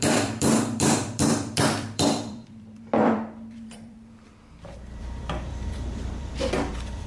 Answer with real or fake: fake